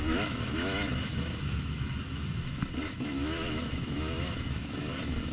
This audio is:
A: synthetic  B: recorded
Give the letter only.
A